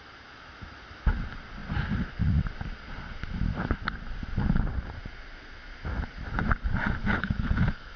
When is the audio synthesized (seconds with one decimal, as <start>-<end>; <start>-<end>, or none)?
7.0-8.0